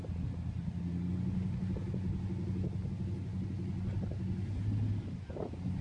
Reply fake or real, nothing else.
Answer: real